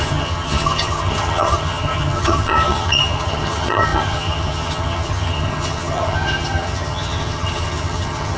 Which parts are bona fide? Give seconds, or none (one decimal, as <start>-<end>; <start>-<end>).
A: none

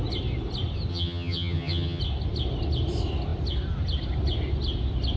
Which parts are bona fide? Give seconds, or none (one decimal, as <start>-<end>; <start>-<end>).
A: 0.0-0.9; 2.0-5.2

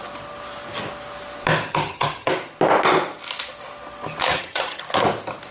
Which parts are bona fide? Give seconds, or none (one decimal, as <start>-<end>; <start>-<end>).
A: 0.0-1.7; 2.3-4.3; 4.8-5.5